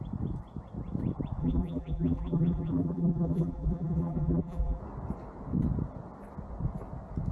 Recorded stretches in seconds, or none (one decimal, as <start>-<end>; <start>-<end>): 0.0-1.4; 4.8-7.3